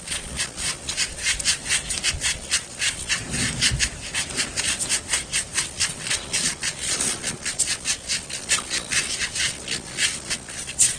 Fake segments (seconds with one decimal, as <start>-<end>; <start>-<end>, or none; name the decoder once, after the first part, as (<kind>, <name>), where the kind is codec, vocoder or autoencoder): 0.0-1.6 (vocoder, Vocos); 2.1-3.2; 5.6-11.0